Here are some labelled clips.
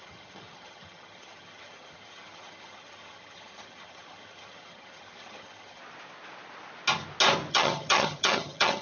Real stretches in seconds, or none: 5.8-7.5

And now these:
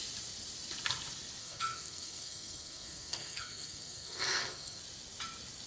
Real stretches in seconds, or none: 0.0-1.4; 4.8-5.7

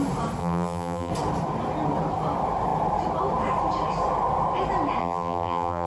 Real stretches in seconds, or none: 0.0-0.4; 1.1-5.0